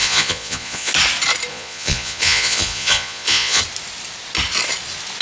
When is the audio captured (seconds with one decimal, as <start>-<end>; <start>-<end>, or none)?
0.9-1.5; 3.6-5.2